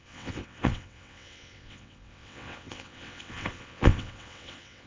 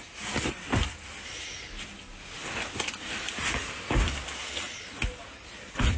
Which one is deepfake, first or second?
first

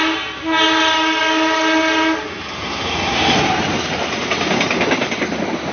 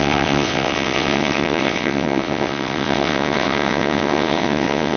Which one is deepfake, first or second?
second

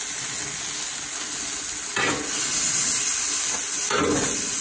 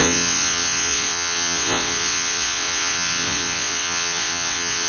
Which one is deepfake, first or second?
second